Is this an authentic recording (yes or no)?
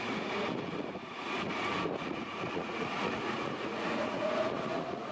no